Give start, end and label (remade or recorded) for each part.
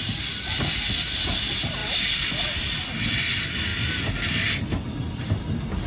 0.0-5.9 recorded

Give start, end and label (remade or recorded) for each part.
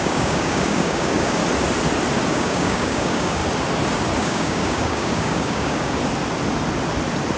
0.0-1.4 remade; 1.4-2.3 recorded; 2.3-3.4 remade; 3.4-4.2 recorded; 4.2-6.0 remade; 6.0-7.4 recorded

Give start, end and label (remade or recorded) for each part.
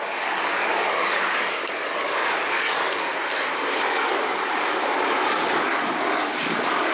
0.0-3.1 remade; 3.1-3.8 recorded; 3.8-6.9 remade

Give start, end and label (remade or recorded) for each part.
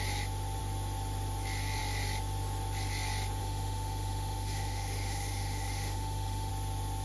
0.0-3.4 recorded; 3.4-6.5 remade; 6.5-7.0 recorded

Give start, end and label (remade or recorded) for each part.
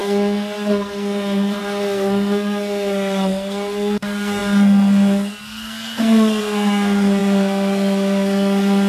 0.0-8.9 remade